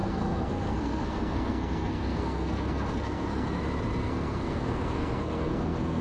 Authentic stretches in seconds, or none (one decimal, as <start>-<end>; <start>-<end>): 3.6-4.0